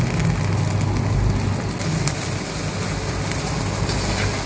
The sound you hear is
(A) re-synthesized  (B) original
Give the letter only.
B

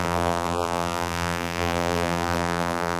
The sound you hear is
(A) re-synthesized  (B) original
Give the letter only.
A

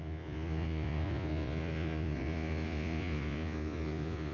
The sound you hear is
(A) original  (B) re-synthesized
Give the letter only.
B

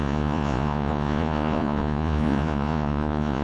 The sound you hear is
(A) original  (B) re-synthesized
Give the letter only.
B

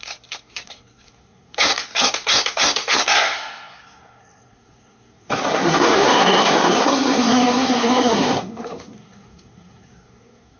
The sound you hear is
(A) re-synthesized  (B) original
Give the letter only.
A